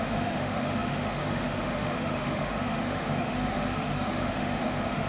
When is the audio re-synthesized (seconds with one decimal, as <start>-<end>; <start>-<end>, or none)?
0.0-5.1

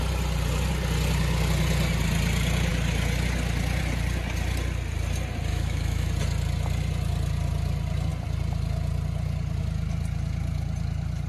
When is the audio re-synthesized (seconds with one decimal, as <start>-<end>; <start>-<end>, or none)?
5.5-6.1

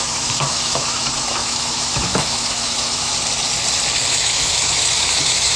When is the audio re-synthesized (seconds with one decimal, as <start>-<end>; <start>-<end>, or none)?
0.0-3.1; 4.1-5.6

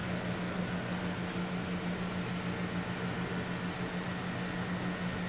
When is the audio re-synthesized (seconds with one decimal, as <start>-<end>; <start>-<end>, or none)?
none

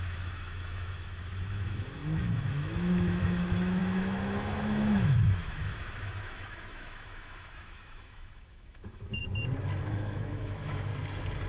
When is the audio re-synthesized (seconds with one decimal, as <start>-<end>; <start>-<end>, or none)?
0.0-9.2; 9.8-10.9

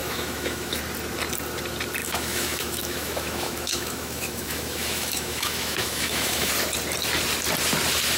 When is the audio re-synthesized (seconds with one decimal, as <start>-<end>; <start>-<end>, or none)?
0.0-0.8; 2.0-6.5